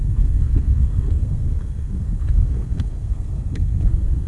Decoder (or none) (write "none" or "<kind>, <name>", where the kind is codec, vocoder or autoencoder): codec, SNAC